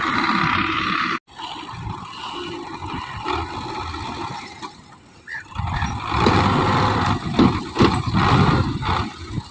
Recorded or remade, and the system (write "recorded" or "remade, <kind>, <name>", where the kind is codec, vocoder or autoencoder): recorded